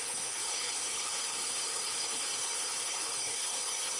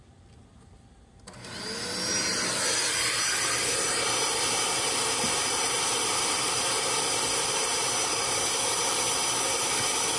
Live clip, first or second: second